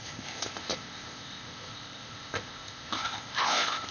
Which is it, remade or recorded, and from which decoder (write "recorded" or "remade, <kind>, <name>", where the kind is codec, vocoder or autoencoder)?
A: remade, codec, ZipCodec